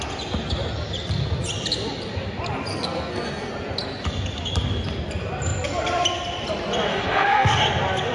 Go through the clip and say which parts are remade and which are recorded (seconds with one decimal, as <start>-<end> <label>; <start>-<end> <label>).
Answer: 0.0-2.7 recorded; 2.7-3.5 remade; 3.5-6.9 recorded; 6.9-7.6 remade; 7.6-8.1 recorded